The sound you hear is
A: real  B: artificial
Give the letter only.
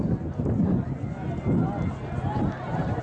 A